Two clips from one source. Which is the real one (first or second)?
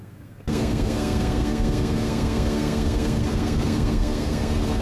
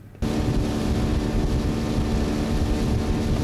second